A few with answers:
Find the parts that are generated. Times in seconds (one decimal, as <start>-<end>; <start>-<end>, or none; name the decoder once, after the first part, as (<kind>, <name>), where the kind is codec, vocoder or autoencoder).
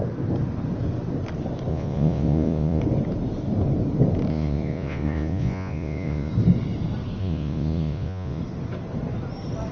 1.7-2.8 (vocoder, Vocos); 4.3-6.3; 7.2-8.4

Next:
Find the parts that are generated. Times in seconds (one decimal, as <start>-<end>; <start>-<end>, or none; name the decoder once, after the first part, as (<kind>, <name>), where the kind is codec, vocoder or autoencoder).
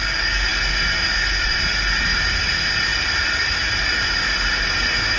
none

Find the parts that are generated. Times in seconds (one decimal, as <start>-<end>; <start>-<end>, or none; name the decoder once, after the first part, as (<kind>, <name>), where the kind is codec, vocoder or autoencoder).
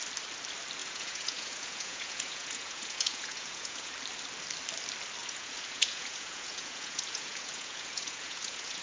0.8-3.9 (vocoder, Vocos); 5.2-8.8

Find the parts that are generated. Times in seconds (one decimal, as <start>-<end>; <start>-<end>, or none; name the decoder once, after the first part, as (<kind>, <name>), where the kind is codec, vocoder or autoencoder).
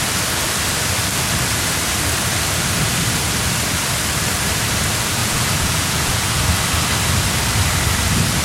5.2-6.4 (vocoder, Vocos)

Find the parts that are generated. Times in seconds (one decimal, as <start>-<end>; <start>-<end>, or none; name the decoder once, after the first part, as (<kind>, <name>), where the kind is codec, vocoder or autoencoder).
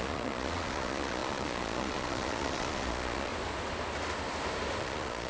0.0-3.3 (vocoder, Vocos); 4.8-5.3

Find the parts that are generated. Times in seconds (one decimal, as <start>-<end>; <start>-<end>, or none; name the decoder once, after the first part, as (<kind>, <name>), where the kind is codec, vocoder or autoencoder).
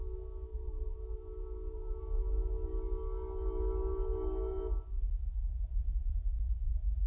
0.5-2.0 (vocoder, Vocos)